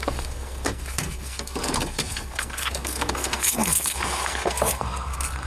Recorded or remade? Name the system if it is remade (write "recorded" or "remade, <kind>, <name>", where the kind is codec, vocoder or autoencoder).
remade, codec, SNAC